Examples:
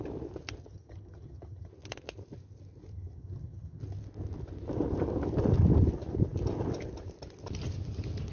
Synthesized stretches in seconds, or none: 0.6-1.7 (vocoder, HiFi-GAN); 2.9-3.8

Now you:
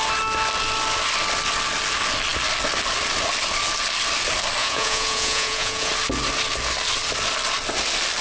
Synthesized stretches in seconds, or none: 4.6-5.9 (vocoder, Vocos)

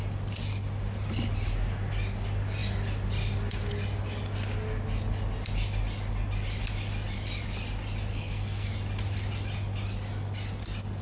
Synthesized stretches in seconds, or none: 8.1-8.7 (codec, SNAC)

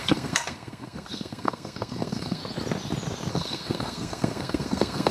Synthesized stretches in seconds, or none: 0.0-2.4 (codec, SNAC); 3.3-5.1

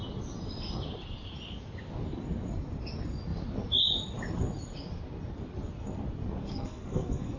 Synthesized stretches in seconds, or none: 6.4-7.4 (codec, SNAC)